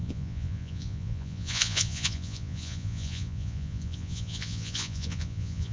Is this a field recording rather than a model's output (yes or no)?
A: no